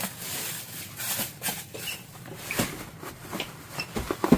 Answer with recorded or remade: recorded